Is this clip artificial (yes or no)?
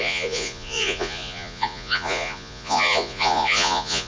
yes